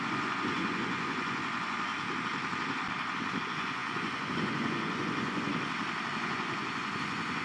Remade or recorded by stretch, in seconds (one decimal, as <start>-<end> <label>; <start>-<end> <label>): 0.0-1.9 remade; 1.9-3.4 recorded; 3.4-5.5 remade; 5.5-6.1 recorded; 6.1-7.4 remade